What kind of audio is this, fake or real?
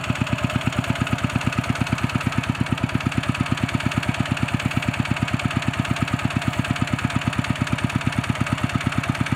real